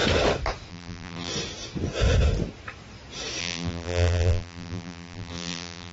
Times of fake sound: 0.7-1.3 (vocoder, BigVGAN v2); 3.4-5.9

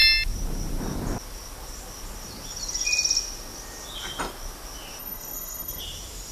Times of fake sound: 5.0-5.8 (codec, SNAC)